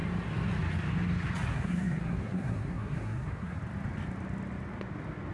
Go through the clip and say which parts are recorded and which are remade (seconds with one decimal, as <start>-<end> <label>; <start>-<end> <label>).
0.0-1.5 recorded; 1.5-3.6 remade; 3.6-5.3 recorded